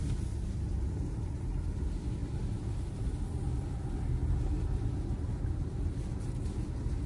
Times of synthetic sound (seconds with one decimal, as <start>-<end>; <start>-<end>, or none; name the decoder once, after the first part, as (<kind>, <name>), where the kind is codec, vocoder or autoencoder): none